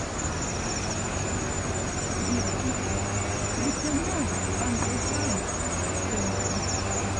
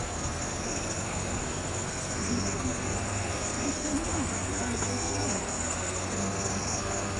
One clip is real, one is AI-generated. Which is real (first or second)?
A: first